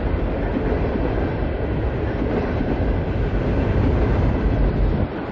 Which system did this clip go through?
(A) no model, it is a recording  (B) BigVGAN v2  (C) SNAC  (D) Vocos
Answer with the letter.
A